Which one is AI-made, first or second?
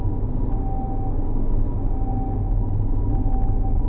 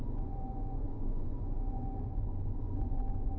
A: second